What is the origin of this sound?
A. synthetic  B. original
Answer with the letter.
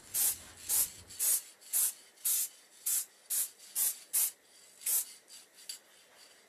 B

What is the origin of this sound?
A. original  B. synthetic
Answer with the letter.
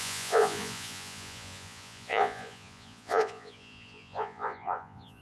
B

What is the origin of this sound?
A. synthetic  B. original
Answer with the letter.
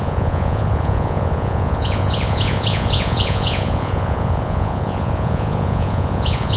A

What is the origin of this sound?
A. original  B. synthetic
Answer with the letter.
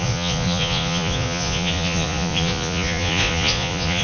B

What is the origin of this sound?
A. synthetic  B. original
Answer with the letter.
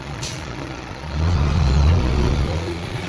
A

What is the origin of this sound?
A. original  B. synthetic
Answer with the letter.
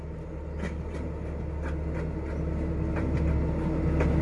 A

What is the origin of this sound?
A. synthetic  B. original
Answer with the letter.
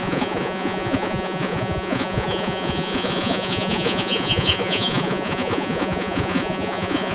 A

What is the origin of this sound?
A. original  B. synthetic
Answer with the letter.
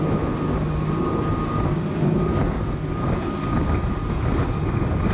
A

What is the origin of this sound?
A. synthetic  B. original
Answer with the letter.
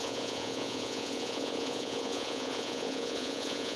A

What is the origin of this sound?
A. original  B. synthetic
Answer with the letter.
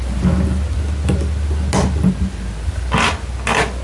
A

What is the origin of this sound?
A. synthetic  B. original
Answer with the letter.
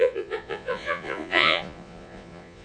A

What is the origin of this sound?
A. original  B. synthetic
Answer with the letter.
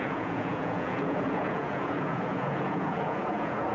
B